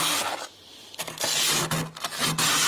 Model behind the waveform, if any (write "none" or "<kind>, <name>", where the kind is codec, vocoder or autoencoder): none